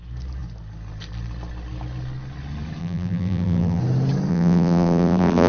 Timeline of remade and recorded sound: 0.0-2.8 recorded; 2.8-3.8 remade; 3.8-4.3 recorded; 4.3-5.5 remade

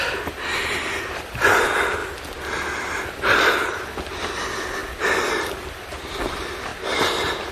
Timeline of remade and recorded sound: 0.0-6.7 recorded; 6.7-7.5 remade

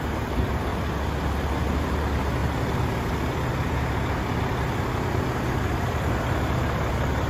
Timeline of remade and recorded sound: 0.0-0.7 remade; 0.7-1.6 recorded; 1.6-2.4 remade; 2.4-5.9 recorded; 5.9-7.3 remade

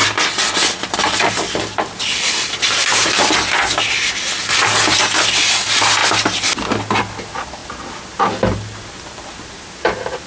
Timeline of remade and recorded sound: 0.0-3.3 remade; 3.3-7.6 recorded; 7.6-9.6 remade; 9.6-10.3 recorded

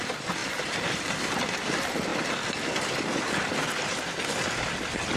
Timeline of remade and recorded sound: 0.0-2.1 remade; 2.1-5.2 recorded

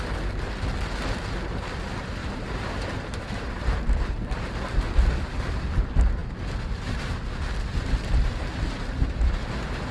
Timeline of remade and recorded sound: 0.0-2.2 recorded; 2.2-5.0 remade; 5.0-9.9 recorded